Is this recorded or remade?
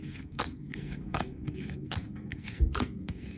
remade